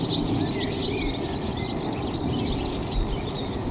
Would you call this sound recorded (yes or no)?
yes